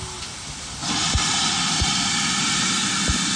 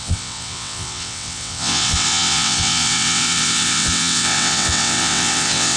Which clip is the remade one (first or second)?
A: second